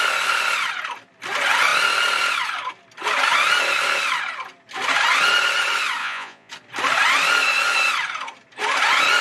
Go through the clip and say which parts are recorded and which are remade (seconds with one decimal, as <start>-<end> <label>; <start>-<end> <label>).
0.0-6.0 recorded; 6.0-6.5 remade; 6.5-9.2 recorded